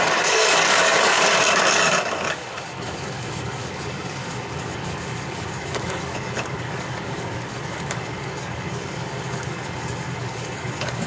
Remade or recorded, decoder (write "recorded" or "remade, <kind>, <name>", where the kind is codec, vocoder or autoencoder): remade, codec, DAC